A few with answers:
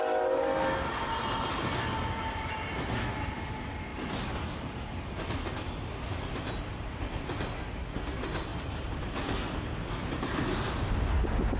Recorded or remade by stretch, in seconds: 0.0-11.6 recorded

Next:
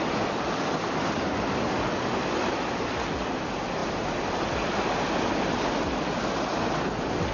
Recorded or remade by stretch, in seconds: 0.0-7.3 recorded

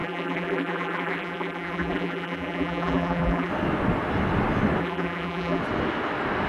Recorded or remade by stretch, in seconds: 0.0-3.5 remade; 3.5-4.8 recorded; 4.8-5.6 remade; 5.6-6.5 recorded

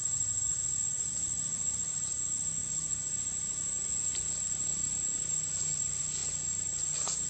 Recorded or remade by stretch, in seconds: 0.0-7.3 recorded

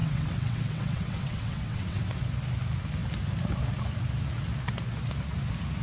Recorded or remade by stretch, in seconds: 0.0-2.0 remade; 2.0-5.8 recorded